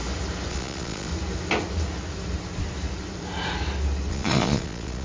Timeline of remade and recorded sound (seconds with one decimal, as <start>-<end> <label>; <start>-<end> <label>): 0.0-0.5 recorded; 0.5-1.1 remade; 1.1-4.1 recorded; 4.1-5.0 remade